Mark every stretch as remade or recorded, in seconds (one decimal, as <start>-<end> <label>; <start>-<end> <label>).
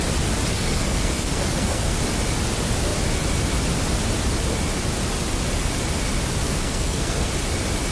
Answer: 0.0-0.5 recorded; 0.5-2.0 remade; 2.0-6.4 recorded; 6.4-7.3 remade; 7.3-7.9 recorded